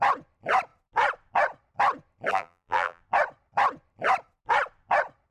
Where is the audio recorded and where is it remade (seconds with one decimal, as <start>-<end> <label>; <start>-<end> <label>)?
0.0-2.3 recorded; 2.3-3.0 remade; 3.0-5.3 recorded